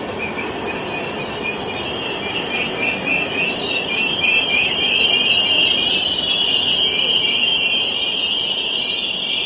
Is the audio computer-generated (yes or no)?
no